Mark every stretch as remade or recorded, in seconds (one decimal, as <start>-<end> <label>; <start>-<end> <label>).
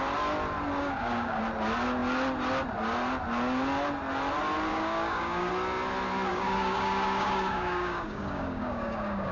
0.0-0.8 recorded; 0.8-1.4 remade; 1.4-4.7 recorded; 4.7-5.5 remade; 5.5-6.3 recorded; 6.3-9.3 remade